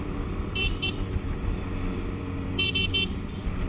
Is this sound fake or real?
fake